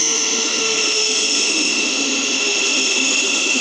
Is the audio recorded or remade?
remade